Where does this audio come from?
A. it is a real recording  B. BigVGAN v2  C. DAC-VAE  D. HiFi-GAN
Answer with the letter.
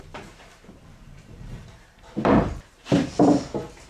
B